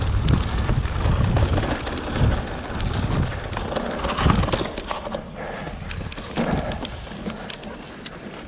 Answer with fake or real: real